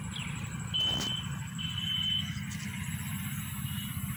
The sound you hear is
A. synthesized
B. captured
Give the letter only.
B